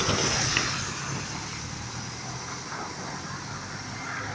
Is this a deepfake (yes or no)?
no